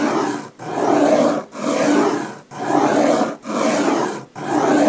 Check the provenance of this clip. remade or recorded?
recorded